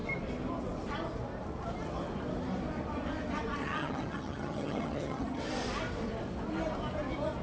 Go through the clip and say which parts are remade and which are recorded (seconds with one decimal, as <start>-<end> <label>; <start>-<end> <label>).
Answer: 0.0-3.6 recorded; 3.6-5.4 remade; 5.4-7.4 recorded